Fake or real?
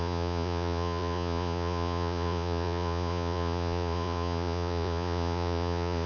fake